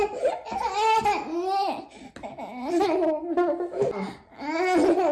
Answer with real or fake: real